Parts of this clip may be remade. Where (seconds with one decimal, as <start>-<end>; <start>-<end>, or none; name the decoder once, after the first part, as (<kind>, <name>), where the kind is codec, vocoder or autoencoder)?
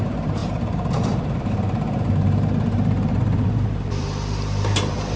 0.0-5.2 (vocoder, BigVGAN v2)